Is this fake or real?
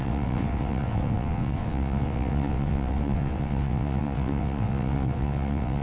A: fake